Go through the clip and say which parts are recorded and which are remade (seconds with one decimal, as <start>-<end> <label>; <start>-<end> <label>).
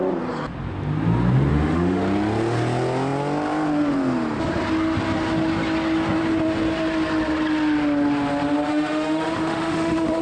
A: 0.0-1.5 recorded; 1.5-2.0 remade; 2.0-8.7 recorded; 8.7-10.2 remade